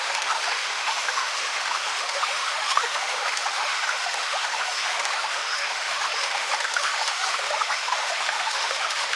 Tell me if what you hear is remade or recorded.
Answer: remade